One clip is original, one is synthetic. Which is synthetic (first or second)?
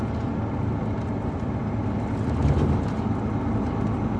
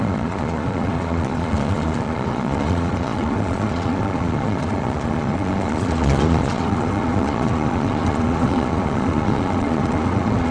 second